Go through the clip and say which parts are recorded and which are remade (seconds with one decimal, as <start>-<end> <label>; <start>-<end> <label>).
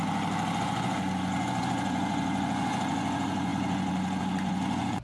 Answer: 0.0-0.6 recorded; 0.6-5.0 remade